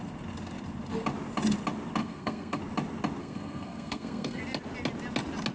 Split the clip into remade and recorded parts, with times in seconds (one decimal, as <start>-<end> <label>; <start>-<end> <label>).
0.0-2.0 recorded; 2.0-2.6 remade; 2.6-3.2 recorded; 3.2-4.4 remade; 4.4-5.5 recorded